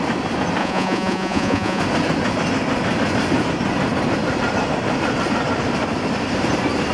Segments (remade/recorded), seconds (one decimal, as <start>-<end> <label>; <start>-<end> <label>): 0.0-0.6 recorded; 0.6-1.8 remade; 1.8-6.9 recorded